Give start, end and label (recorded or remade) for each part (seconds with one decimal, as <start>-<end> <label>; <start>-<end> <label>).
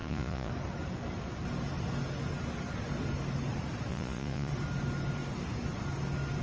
0.0-0.5 remade; 0.5-3.9 recorded; 3.9-4.5 remade; 4.5-6.4 recorded